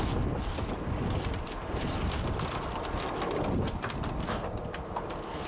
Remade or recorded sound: recorded